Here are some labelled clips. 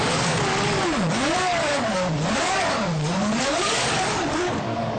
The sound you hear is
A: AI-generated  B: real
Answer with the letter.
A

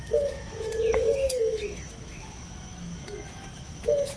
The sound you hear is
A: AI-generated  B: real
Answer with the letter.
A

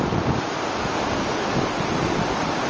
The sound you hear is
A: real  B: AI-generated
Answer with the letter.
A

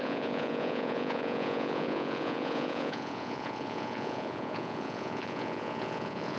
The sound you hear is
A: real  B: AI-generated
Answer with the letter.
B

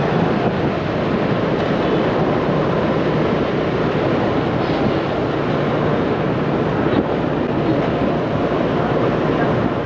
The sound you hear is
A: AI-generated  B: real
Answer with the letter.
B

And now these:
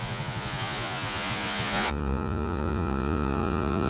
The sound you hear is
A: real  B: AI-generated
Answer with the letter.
B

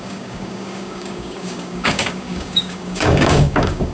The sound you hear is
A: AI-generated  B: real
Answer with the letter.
A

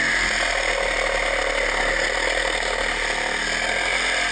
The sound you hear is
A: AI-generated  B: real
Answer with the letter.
B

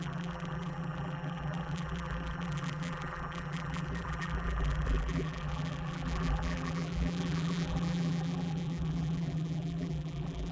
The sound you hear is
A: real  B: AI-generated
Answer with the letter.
B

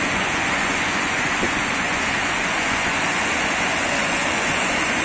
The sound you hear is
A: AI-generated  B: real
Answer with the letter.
A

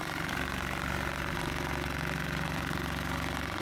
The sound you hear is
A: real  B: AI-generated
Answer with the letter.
A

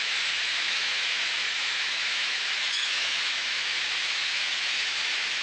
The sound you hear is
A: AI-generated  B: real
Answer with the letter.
A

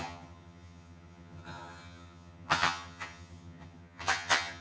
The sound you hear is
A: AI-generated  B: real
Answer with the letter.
A